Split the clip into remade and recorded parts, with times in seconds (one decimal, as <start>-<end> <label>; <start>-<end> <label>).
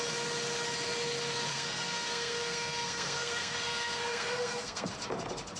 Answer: 0.0-1.5 recorded; 1.5-4.9 remade; 4.9-5.6 recorded